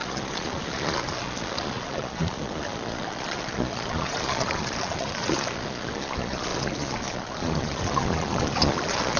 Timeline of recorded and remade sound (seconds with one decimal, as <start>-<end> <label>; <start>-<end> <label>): 0.0-9.2 remade